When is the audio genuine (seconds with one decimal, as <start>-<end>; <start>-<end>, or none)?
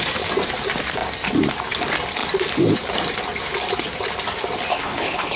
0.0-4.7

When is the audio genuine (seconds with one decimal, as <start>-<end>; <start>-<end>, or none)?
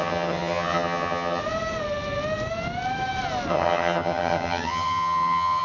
1.4-3.5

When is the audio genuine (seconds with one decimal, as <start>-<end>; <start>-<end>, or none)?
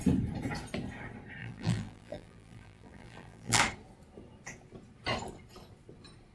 0.0-1.4; 3.6-6.3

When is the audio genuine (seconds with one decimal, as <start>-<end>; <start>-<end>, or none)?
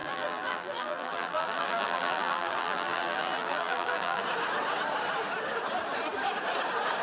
4.2-7.0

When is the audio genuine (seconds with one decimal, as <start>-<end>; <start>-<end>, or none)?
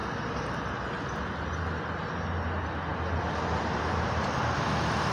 0.0-5.1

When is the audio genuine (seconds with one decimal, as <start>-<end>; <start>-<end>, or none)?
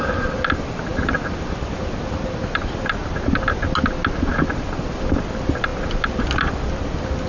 3.0-4.5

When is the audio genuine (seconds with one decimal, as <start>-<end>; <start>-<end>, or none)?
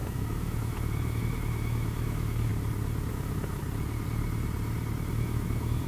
2.5-3.1; 3.6-5.1